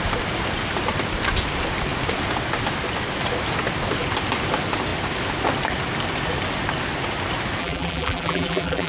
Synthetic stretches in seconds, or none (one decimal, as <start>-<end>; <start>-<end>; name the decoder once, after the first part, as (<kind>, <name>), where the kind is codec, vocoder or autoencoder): 7.6-8.9 (vocoder, BigVGAN v2)